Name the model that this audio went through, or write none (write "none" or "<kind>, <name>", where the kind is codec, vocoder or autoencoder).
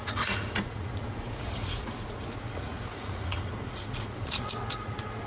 vocoder, Vocos